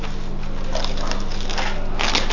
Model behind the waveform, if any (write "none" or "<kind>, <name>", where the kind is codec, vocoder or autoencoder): none